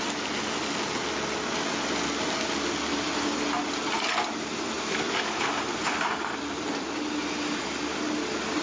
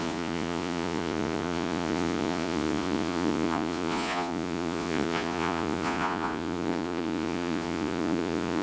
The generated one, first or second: second